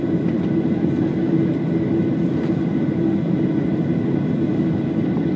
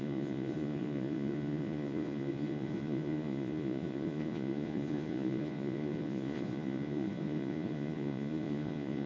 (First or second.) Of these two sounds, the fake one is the second